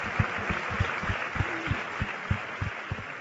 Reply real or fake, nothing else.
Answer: fake